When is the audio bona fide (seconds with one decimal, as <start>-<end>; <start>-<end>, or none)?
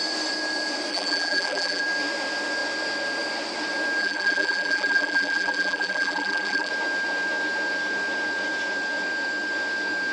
0.0-0.9; 1.8-4.0; 6.7-10.1